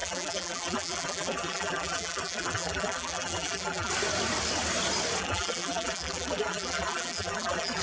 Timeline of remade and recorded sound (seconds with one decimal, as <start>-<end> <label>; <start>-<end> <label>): 0.0-3.9 remade; 3.9-5.2 recorded; 5.2-7.8 remade